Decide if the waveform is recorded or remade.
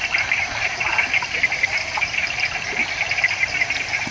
recorded